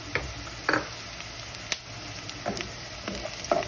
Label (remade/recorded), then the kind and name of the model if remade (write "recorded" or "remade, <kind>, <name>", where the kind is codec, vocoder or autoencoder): recorded